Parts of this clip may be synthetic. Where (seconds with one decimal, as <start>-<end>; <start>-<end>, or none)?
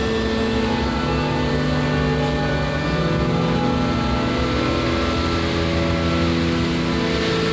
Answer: none